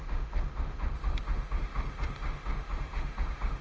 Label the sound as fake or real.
fake